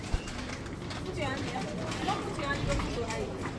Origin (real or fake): real